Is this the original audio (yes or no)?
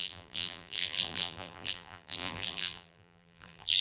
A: no